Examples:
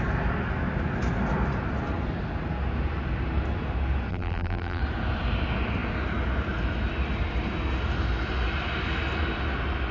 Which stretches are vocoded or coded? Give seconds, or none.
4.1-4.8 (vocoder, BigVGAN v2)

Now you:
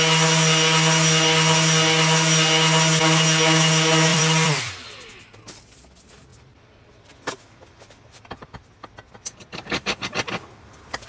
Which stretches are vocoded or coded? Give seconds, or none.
4.1-4.7 (vocoder, BigVGAN v2); 6.3-11.1

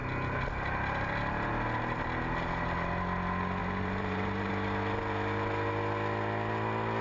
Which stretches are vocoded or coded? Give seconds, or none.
3.6-4.5 (vocoder, BigVGAN v2)

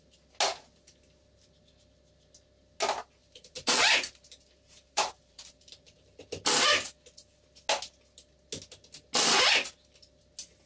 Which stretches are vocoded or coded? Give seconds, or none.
3.2-6.2 (vocoder, BigVGAN v2)